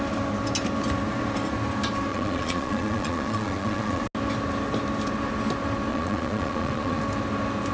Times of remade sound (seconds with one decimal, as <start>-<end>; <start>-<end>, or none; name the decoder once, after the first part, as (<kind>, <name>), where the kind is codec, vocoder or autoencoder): 2.1-4.0 (vocoder, Vocos); 5.9-7.0